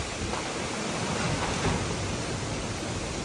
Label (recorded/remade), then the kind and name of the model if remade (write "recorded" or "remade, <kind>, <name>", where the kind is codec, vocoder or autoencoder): recorded